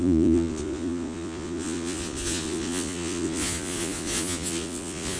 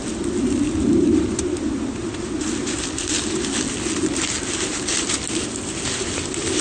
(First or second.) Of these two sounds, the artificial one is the first